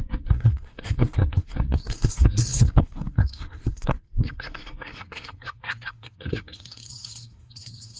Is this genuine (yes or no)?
no